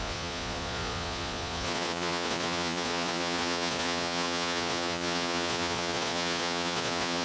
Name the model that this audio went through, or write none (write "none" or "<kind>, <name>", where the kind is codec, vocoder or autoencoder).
vocoder, Vocos